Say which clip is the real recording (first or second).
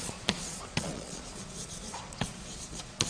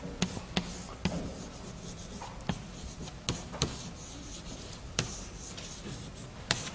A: second